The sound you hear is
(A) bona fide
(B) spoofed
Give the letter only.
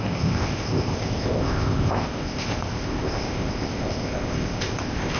B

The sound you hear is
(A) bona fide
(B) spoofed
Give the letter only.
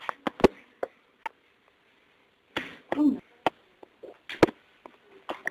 A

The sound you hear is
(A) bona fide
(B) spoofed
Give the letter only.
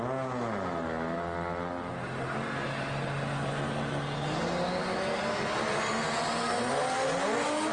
A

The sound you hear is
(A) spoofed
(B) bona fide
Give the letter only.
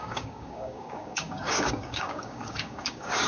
A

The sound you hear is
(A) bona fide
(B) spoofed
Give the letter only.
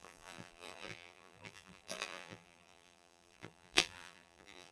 B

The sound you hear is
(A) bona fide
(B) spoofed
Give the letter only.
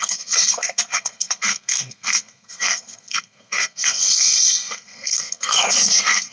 B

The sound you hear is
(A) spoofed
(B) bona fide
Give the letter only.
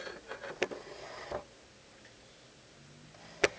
B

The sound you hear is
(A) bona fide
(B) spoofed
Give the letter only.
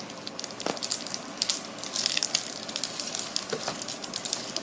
A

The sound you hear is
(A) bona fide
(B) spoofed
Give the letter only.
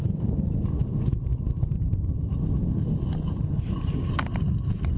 A